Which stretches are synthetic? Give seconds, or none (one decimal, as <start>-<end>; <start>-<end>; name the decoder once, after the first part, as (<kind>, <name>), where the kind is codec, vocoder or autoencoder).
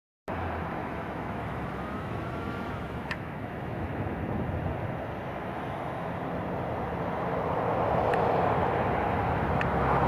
0.8-4.2 (autoencoder, DAC-VAE)